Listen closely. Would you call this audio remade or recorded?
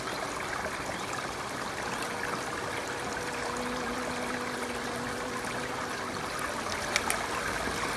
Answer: recorded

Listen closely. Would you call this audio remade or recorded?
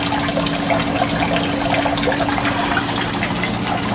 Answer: recorded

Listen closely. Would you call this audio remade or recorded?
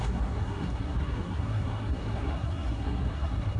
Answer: remade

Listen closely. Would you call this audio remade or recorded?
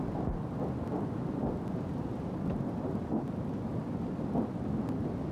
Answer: recorded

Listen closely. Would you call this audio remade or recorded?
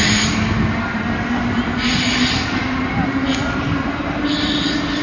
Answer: recorded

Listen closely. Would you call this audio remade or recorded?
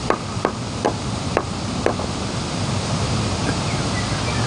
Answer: recorded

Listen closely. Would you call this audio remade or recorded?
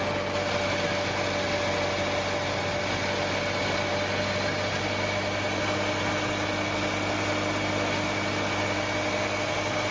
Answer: recorded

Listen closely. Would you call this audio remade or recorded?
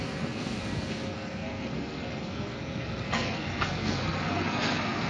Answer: remade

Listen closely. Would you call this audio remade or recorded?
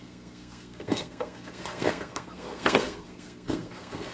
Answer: remade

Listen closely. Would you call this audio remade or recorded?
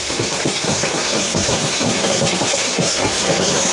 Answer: remade